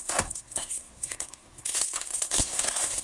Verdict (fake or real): fake